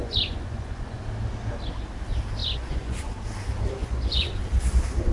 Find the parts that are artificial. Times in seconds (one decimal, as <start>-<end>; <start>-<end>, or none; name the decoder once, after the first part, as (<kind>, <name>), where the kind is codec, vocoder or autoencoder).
0.0-1.0 (vocoder, Vocos); 2.4-3.0; 3.8-4.4